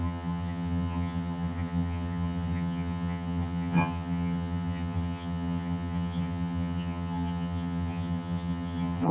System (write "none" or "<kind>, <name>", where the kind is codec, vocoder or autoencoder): vocoder, HiFi-GAN